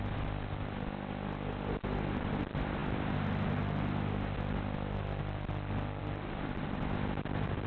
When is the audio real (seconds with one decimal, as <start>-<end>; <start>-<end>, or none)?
0.0-7.7